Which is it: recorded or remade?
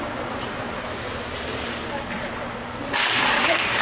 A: remade